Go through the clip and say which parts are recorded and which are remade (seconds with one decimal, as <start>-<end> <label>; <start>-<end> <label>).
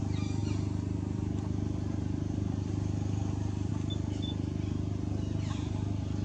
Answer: 0.0-0.4 recorded; 0.4-3.7 remade; 3.7-6.2 recorded